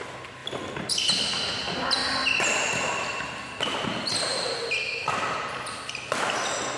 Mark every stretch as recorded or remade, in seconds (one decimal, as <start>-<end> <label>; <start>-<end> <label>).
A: 0.0-6.8 recorded